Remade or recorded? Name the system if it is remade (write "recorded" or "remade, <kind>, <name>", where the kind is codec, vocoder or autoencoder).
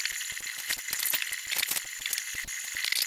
recorded